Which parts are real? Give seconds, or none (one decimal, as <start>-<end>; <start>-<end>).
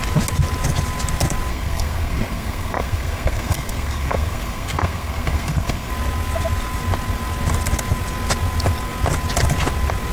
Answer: 0.0-1.5; 5.9-10.1